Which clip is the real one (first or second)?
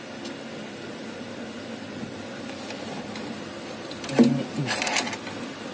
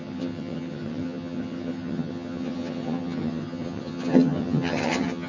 first